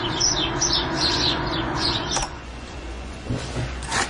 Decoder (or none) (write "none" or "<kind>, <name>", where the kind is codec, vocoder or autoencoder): vocoder, Vocos